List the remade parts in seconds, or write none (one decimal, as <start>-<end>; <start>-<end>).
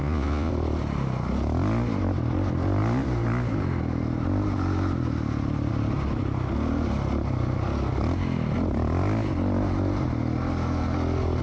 0.0-0.5